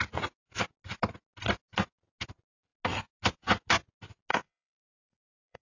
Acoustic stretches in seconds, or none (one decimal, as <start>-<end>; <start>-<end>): 0.0-4.3